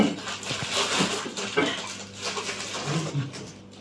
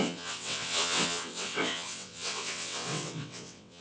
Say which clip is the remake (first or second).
second